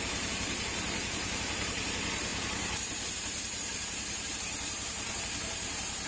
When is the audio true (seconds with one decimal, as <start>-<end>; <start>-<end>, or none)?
none